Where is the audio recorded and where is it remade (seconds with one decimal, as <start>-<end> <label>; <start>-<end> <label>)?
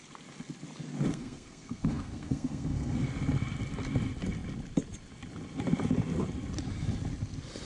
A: 0.0-1.1 recorded; 1.1-3.1 remade; 3.1-7.7 recorded